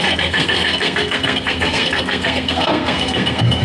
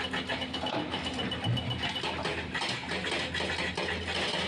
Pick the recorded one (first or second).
second